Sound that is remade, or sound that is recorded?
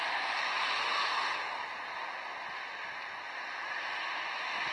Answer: recorded